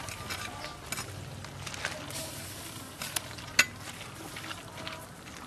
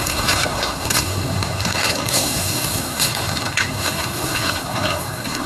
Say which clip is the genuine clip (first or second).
first